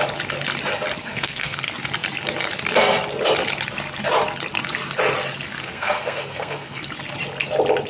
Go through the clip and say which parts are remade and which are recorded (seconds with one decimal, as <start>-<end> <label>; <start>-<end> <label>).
0.0-1.0 recorded; 1.0-1.6 remade; 1.6-5.6 recorded; 5.6-6.9 remade; 6.9-7.9 recorded